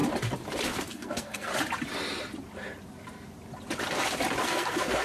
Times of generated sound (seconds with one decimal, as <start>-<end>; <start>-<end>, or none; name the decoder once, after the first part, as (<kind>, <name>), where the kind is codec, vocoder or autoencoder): 0.9-1.5 (codec, SNAC); 4.4-5.0